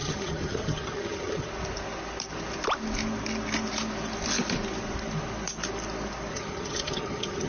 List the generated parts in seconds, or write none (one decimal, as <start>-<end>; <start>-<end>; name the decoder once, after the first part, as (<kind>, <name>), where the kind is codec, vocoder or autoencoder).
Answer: 0.0-1.5 (vocoder, HiFi-GAN); 6.3-7.5